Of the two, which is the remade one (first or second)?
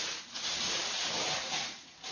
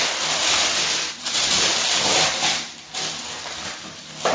first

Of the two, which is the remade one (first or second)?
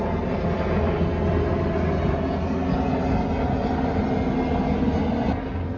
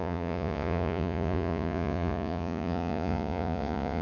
second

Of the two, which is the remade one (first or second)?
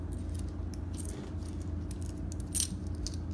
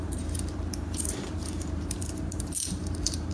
second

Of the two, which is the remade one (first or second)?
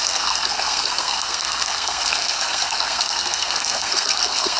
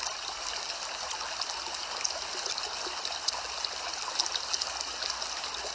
first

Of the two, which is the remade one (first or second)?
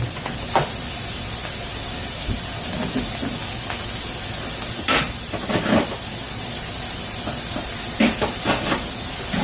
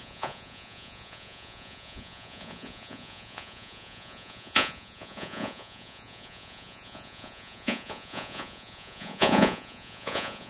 second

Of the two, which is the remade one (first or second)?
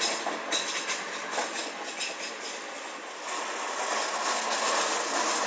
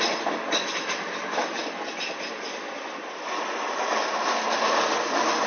second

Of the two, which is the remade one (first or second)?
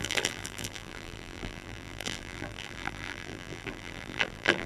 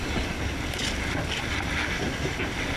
first